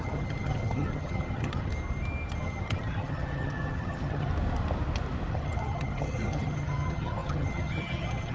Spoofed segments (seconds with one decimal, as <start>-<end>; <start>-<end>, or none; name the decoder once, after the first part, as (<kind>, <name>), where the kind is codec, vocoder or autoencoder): 0.0-1.7 (vocoder, HiFi-GAN); 2.4-4.3; 5.3-8.3